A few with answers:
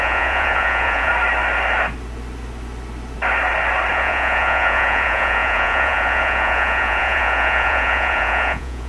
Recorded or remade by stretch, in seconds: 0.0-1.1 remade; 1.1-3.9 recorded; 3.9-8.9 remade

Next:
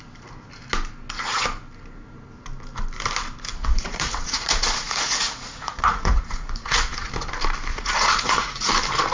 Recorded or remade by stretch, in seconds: 0.0-3.5 recorded; 3.5-7.1 remade; 7.1-7.7 recorded; 7.7-8.7 remade; 8.7-9.1 recorded

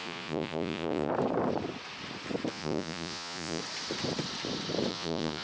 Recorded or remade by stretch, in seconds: 0.0-1.1 remade; 1.1-2.5 recorded; 2.5-3.6 remade; 3.6-4.9 recorded; 4.9-5.4 remade

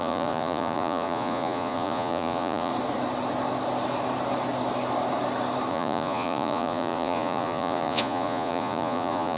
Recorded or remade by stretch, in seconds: 0.0-2.7 remade; 2.7-5.7 recorded; 5.7-9.4 remade

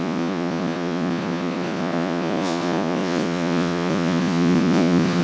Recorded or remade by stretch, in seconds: 0.0-5.2 remade

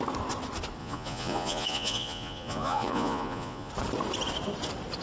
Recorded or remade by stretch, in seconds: 0.0-0.8 recorded; 0.8-3.7 remade; 3.7-5.0 recorded

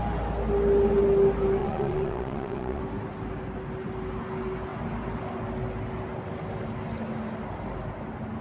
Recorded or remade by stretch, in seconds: 0.0-1.6 recorded; 1.6-2.8 remade; 2.8-8.4 recorded